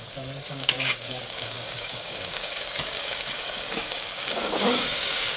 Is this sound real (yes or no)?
no